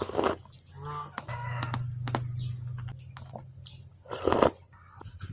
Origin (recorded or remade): recorded